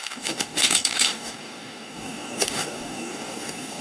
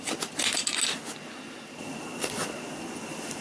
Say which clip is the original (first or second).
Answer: second